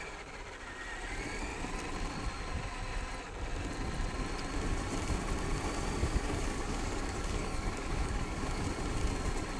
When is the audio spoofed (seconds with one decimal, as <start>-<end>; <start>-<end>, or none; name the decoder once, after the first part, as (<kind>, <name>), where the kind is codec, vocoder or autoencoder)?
6.0-8.7 (codec, DAC)